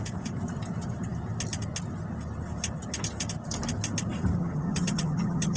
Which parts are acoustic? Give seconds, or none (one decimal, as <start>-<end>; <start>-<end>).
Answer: 0.0-4.4